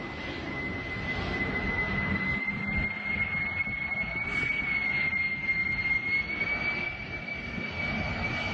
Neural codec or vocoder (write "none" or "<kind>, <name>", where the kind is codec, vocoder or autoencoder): none